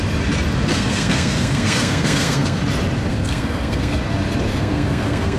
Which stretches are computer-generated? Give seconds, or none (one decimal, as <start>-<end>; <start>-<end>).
0.7-2.6; 3.1-4.0; 4.5-5.4